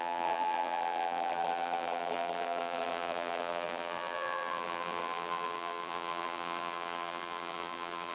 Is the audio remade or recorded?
remade